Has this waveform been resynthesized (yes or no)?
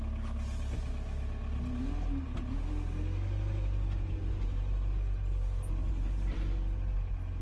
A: no